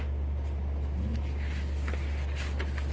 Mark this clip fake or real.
fake